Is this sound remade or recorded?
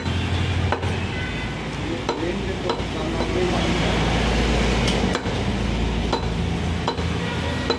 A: recorded